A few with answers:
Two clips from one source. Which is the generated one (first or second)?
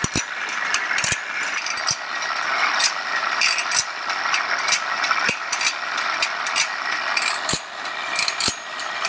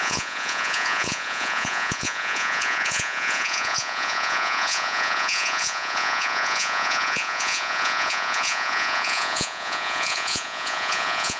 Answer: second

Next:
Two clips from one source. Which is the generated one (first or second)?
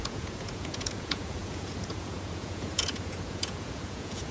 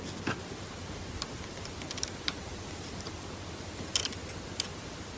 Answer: first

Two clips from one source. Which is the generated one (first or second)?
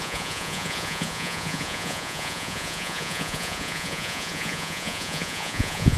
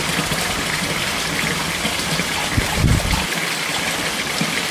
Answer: first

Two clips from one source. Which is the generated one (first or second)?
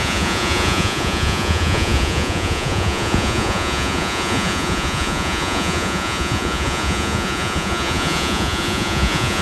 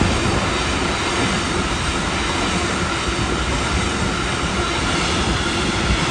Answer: first